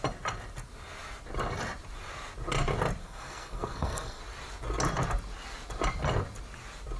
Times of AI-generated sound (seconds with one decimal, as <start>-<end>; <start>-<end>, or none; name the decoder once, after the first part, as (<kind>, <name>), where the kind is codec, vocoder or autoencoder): 3.0-4.2 (codec, SNAC)